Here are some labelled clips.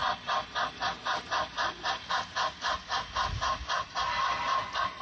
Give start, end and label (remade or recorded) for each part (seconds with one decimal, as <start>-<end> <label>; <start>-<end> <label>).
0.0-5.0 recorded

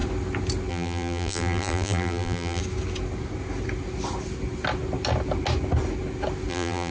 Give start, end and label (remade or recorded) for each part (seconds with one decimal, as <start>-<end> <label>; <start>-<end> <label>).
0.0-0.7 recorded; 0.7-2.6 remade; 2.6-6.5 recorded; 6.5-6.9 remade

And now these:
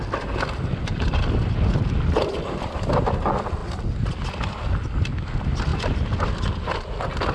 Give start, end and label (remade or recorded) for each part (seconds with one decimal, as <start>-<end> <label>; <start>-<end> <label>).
0.0-7.3 recorded